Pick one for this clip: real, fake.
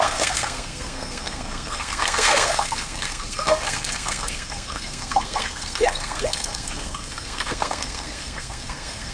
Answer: fake